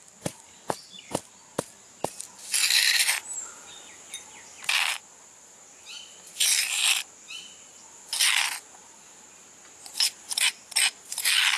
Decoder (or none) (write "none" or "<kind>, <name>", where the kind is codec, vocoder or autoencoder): none